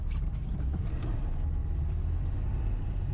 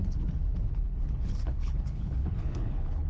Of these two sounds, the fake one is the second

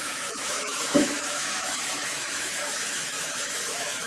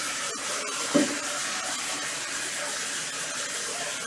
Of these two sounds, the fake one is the first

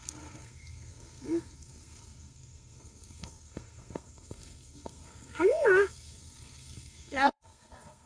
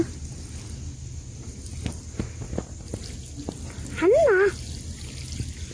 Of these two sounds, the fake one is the first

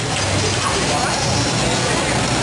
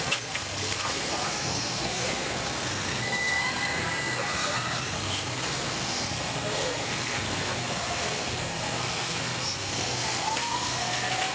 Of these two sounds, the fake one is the second